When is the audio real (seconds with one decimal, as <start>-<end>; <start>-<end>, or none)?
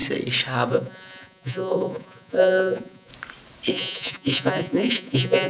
0.0-0.7; 3.1-3.7